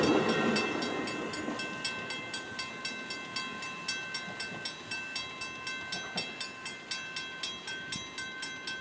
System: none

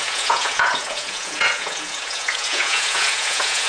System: vocoder, Vocos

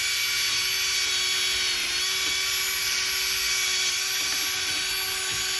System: none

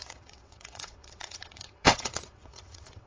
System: vocoder, WaveNeXt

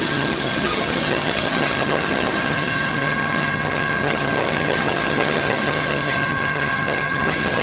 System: vocoder, HiFi-GAN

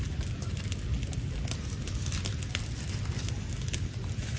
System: none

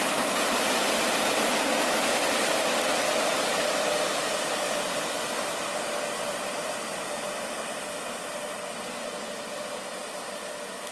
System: none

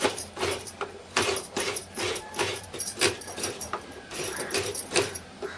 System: vocoder, BigVGAN v2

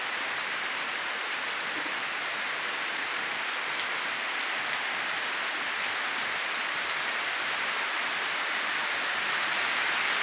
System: none